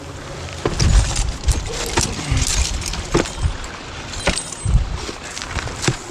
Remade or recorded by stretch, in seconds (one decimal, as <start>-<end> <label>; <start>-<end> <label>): 0.0-6.1 recorded